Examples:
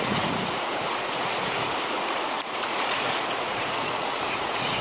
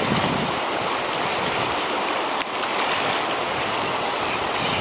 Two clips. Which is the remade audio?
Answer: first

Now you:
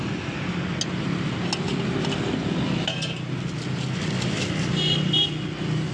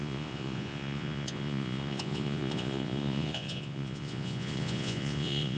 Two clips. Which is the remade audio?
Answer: second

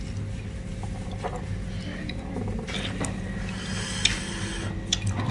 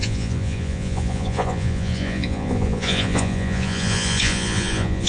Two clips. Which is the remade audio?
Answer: second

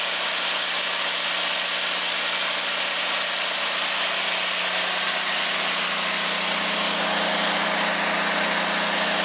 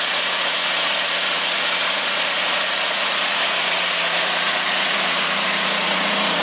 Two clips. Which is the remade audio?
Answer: second